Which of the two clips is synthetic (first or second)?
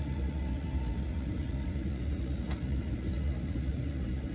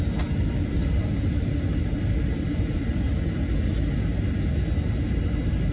first